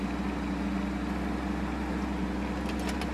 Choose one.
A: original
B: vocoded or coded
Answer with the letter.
A